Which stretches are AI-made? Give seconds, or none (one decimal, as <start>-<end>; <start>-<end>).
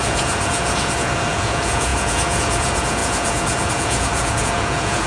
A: 0.0-5.1